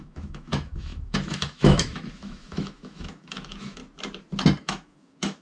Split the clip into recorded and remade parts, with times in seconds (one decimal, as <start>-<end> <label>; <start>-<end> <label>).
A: 0.0-3.8 remade; 3.8-4.6 recorded; 4.6-5.4 remade